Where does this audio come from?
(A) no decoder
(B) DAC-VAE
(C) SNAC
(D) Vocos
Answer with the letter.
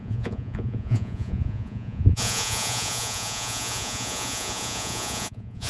D